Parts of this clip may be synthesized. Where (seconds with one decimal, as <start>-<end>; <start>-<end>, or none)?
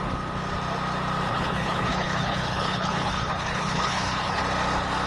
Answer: 1.3-4.4